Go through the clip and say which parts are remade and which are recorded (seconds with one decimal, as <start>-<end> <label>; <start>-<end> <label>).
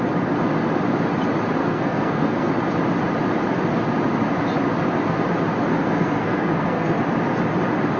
0.0-1.6 recorded; 1.6-2.5 remade; 2.5-5.7 recorded; 5.7-7.0 remade; 7.0-8.0 recorded